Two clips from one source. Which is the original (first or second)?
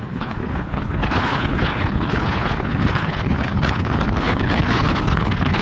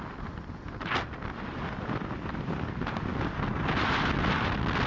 second